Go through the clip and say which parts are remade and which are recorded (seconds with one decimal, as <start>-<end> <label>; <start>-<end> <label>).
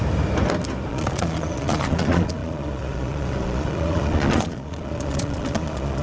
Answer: 0.0-0.9 recorded; 0.9-6.0 remade